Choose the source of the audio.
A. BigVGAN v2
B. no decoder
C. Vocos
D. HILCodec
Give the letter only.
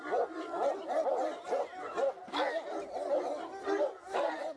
B